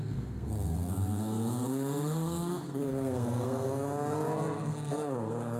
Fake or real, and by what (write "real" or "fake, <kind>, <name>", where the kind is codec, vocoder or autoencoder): fake, codec, SNAC